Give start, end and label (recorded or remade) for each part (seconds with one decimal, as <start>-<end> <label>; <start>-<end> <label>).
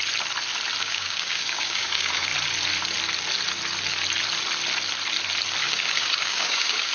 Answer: 0.0-0.8 recorded; 0.8-2.3 remade; 2.3-5.6 recorded; 5.6-6.9 remade